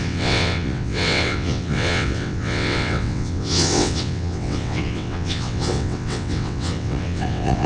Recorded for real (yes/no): no